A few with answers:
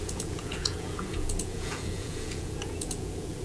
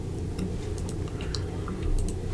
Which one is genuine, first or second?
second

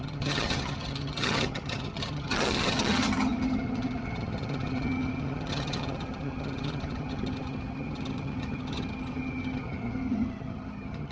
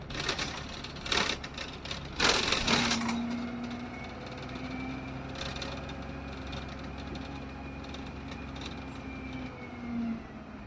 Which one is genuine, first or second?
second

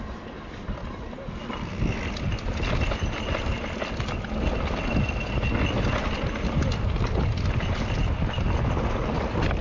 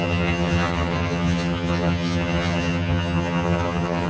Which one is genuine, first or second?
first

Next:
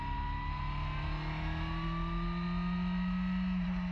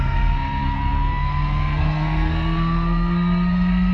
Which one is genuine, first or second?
first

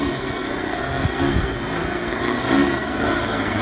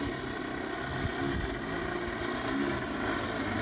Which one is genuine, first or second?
second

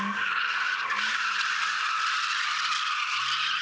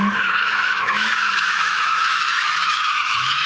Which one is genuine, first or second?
first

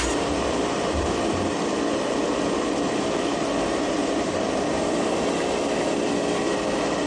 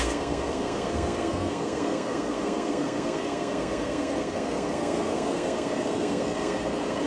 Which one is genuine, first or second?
first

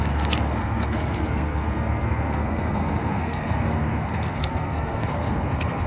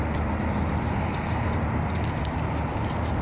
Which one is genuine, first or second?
second